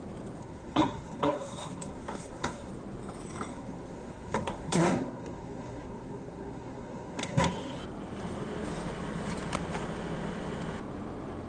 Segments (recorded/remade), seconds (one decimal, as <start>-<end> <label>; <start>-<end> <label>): 0.0-0.4 recorded; 0.4-2.7 remade; 2.7-3.5 recorded; 3.5-7.8 remade; 7.8-11.5 recorded